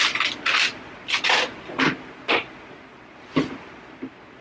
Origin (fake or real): real